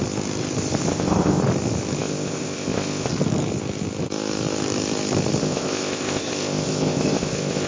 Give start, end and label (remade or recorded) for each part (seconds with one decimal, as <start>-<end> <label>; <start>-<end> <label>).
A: 0.0-0.9 recorded; 0.9-1.4 remade; 1.4-2.0 recorded; 2.0-3.1 remade; 3.1-5.4 recorded; 5.4-7.7 remade